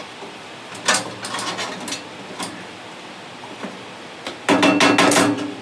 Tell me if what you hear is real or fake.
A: real